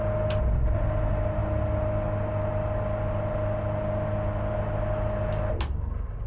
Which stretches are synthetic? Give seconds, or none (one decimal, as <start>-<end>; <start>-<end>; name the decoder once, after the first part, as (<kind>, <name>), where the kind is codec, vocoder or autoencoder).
none